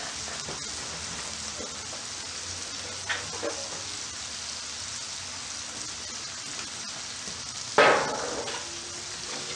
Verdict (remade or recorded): recorded